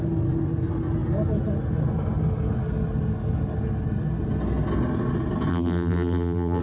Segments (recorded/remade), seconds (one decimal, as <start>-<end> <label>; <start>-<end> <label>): 0.0-5.5 recorded; 5.5-6.6 remade

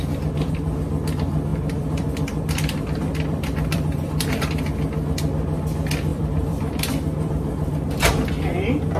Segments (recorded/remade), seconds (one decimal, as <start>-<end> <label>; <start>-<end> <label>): 0.0-1.5 recorded; 1.5-4.5 remade; 4.5-6.1 recorded; 6.1-9.0 remade

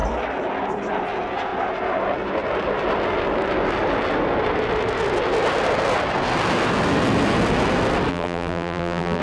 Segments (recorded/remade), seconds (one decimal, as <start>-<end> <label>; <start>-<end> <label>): 0.0-8.1 recorded; 8.1-9.2 remade